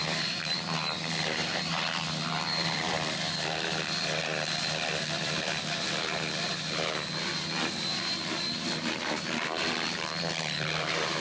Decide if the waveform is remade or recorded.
remade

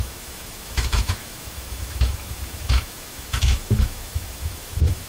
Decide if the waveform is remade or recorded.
remade